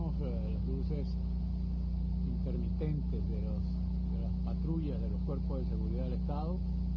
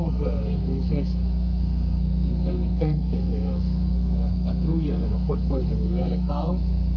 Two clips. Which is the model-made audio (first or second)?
second